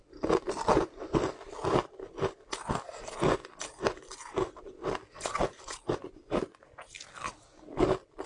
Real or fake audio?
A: real